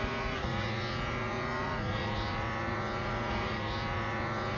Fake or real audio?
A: fake